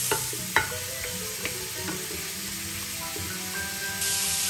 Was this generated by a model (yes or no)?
no